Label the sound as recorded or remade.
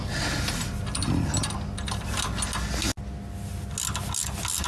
recorded